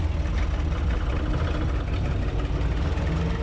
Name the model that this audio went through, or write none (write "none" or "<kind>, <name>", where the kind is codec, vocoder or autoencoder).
none